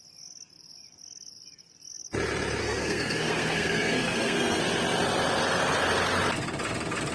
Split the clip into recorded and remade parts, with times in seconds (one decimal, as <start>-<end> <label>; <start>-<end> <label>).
0.0-2.6 recorded; 2.6-4.6 remade; 4.6-7.1 recorded